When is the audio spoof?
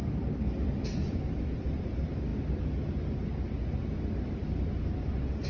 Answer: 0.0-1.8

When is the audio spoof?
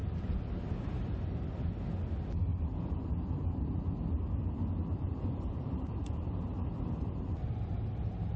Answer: 0.0-1.3; 2.5-3.1; 4.9-8.4